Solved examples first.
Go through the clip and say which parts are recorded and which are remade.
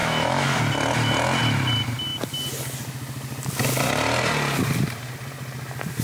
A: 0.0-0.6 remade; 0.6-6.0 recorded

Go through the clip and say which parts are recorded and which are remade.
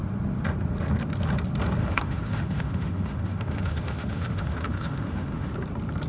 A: 0.0-1.8 recorded; 1.8-5.5 remade; 5.5-6.1 recorded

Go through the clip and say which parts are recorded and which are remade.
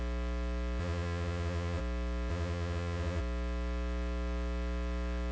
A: 0.0-0.8 recorded; 0.8-1.8 remade; 1.8-2.3 recorded; 2.3-3.2 remade; 3.2-5.3 recorded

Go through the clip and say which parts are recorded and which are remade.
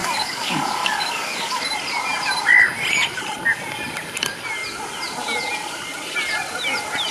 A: 0.0-1.6 remade; 1.6-7.1 recorded